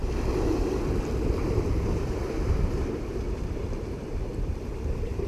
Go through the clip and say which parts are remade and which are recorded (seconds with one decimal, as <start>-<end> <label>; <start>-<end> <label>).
0.0-2.5 recorded; 2.5-5.3 remade